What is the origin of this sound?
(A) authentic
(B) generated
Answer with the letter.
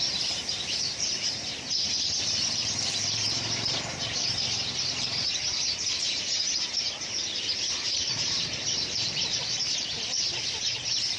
B